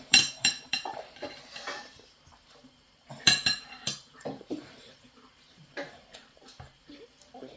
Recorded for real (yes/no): no